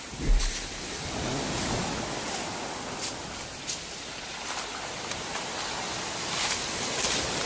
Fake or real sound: real